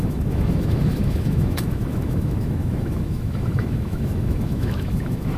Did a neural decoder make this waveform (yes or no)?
yes